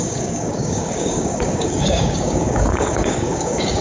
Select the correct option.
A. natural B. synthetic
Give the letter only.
B